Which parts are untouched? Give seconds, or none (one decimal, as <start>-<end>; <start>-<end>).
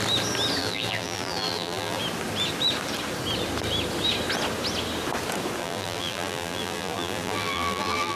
0.0-0.6; 2.0-5.6